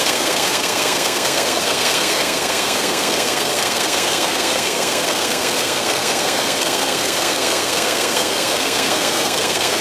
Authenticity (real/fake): fake